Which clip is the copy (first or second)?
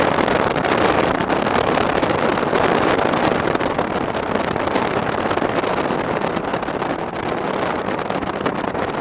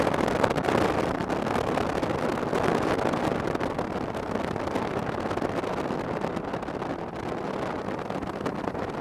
first